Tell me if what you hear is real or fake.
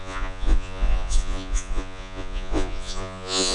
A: fake